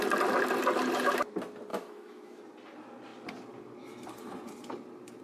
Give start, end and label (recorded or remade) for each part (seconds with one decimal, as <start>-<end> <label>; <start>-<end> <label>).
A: 0.0-1.7 recorded; 1.7-2.4 remade; 2.4-5.2 recorded

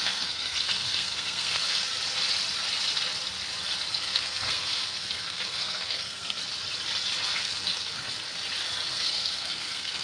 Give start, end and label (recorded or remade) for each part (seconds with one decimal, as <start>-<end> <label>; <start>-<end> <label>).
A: 0.0-1.9 remade; 1.9-3.9 recorded; 3.9-6.4 remade; 6.4-7.4 recorded; 7.4-8.1 remade; 8.1-8.9 recorded; 8.9-10.0 remade

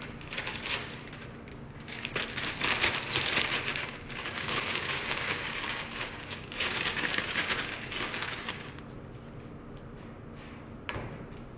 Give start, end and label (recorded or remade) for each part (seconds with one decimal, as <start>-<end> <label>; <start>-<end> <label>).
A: 0.0-1.5 recorded; 1.5-2.1 remade; 2.1-3.8 recorded; 3.8-8.8 remade; 8.8-11.6 recorded

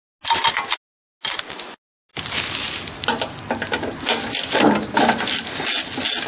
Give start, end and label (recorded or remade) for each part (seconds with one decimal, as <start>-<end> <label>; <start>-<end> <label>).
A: 0.0-6.3 recorded

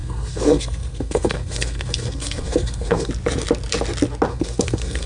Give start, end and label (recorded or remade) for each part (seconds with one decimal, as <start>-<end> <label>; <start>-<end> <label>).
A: 0.0-3.1 remade; 3.1-4.3 recorded; 4.3-5.1 remade

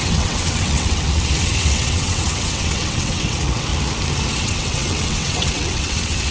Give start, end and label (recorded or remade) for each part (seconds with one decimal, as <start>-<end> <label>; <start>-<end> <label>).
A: 0.0-3.7 remade; 3.7-4.3 recorded; 4.3-6.3 remade

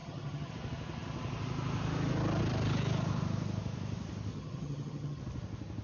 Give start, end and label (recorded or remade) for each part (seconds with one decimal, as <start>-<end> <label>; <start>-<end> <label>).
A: 0.0-0.5 remade; 0.5-4.3 recorded; 4.3-5.2 remade; 5.2-5.8 recorded